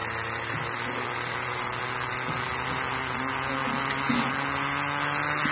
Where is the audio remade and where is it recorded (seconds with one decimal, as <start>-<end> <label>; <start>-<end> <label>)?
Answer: 0.0-5.5 recorded